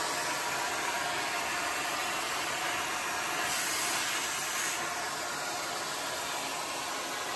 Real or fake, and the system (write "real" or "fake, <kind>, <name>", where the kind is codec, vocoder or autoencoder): real